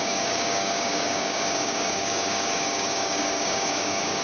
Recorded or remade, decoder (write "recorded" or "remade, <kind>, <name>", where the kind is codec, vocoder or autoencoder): remade, codec, DAC